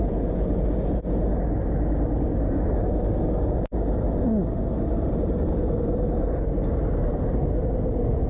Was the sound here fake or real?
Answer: real